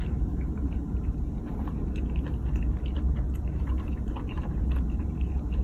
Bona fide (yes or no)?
no